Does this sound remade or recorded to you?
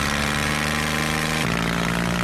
recorded